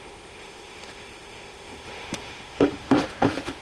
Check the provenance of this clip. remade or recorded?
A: remade